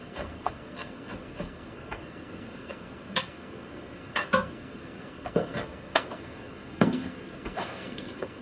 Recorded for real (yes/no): no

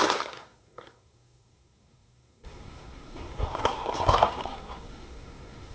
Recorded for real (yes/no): no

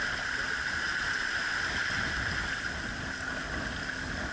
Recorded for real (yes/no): yes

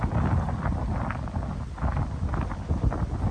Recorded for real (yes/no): yes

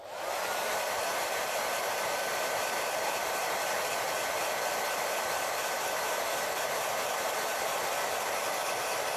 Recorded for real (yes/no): yes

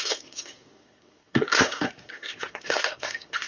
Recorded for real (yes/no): no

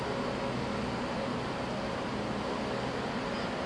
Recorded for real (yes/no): yes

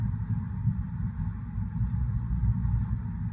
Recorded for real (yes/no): yes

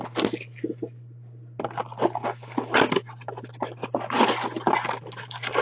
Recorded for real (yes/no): yes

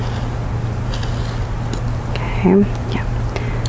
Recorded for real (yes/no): yes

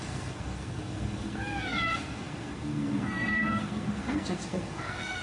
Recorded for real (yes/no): no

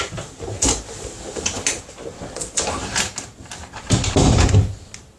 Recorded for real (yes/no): yes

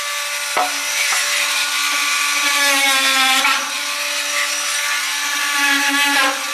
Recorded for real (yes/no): yes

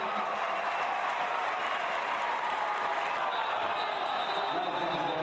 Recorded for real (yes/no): yes